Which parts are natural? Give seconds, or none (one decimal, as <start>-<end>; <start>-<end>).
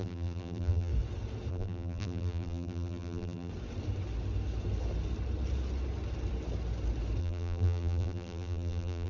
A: 0.9-1.5; 3.5-7.2